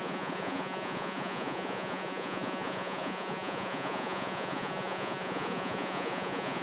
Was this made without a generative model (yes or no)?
no